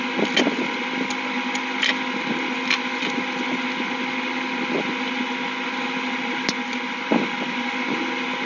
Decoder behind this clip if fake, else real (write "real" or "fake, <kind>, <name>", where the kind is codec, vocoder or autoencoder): real